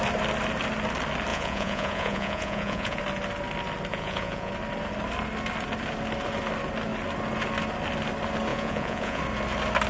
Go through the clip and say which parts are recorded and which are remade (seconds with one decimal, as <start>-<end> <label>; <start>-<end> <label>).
0.0-1.3 recorded; 1.3-3.0 remade; 3.0-3.9 recorded; 3.9-4.5 remade; 4.5-8.5 recorded; 8.5-9.2 remade; 9.2-9.9 recorded